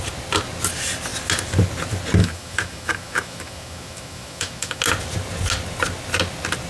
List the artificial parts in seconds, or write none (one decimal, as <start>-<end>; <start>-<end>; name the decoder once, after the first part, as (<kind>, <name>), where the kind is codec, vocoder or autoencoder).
2.2-4.8 (autoencoder, DAC-VAE)